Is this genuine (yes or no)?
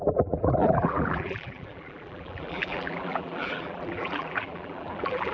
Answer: no